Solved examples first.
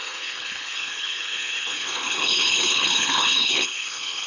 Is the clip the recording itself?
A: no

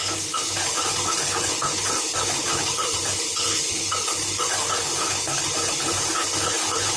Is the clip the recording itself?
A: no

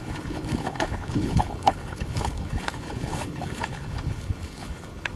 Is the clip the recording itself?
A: no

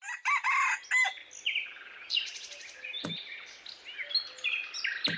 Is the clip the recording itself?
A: yes